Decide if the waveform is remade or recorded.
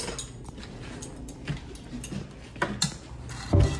recorded